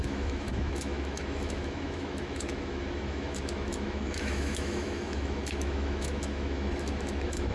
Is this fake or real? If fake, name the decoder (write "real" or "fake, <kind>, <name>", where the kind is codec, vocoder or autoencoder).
fake, autoencoder, DAC-VAE